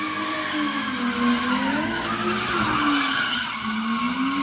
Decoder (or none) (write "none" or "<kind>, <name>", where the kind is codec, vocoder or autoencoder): none